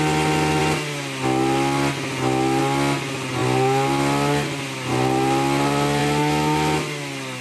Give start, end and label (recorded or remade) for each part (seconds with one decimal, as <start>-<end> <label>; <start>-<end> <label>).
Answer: 0.0-7.4 recorded